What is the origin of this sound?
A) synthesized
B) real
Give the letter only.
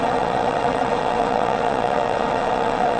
A